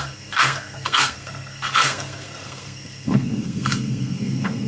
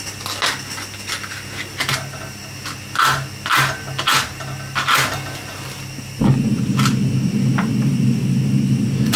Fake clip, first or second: first